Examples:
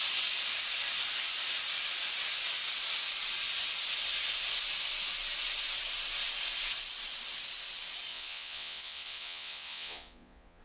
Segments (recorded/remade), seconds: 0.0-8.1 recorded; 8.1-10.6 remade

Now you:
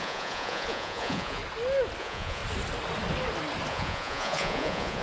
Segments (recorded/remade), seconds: 0.0-1.4 remade; 1.4-2.0 recorded; 2.0-2.4 remade; 2.4-3.7 recorded; 3.7-5.0 remade

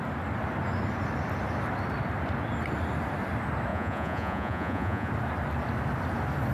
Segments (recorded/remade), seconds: 0.0-3.7 recorded; 3.7-5.1 remade; 5.1-6.5 recorded

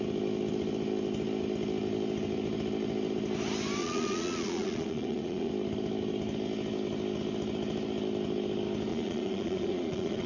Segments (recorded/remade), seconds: 0.0-3.8 recorded; 3.8-5.5 remade; 5.5-8.9 recorded; 8.9-10.3 remade

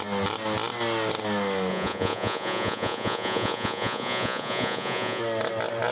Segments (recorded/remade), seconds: 0.0-1.7 recorded; 1.7-5.2 remade; 5.2-5.9 recorded

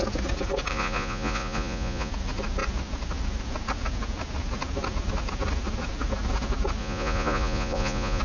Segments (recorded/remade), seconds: 0.0-0.7 recorded; 0.7-2.1 remade; 2.1-6.8 recorded; 6.8-8.2 remade

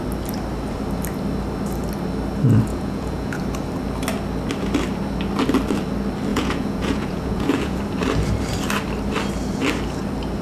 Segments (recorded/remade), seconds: 0.0-2.7 recorded; 2.7-3.4 remade; 3.4-6.3 recorded; 6.3-7.8 remade; 7.8-10.4 recorded